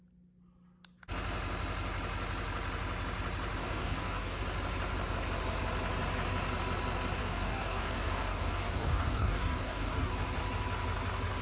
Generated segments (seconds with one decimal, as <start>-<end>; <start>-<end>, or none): 3.6-4.4; 7.2-10.1